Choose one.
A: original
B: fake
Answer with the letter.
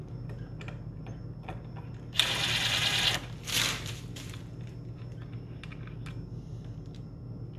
A